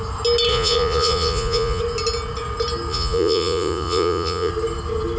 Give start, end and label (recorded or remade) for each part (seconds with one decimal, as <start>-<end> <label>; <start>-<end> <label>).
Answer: 0.0-0.5 recorded; 0.5-1.8 remade; 1.8-2.9 recorded; 2.9-4.5 remade; 4.5-5.2 recorded